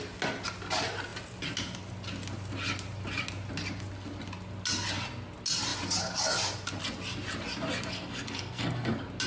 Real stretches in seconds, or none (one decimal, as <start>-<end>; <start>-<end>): 0.0-7.9; 8.9-9.3